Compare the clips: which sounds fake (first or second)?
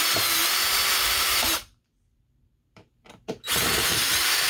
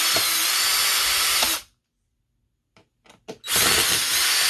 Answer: first